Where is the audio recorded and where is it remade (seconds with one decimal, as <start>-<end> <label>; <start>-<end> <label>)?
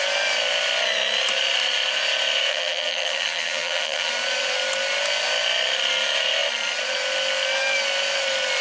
0.0-2.5 recorded; 2.5-4.1 remade; 4.1-8.6 recorded